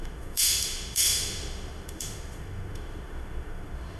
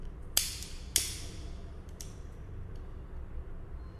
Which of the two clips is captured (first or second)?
second